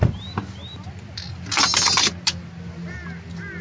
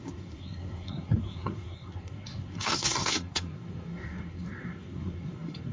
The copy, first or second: second